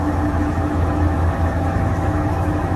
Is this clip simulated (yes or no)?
yes